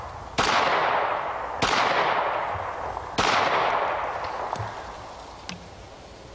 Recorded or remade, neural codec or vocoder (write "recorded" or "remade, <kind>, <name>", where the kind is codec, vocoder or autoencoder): recorded